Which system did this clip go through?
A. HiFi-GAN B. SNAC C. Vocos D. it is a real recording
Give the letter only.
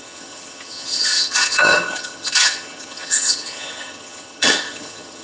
A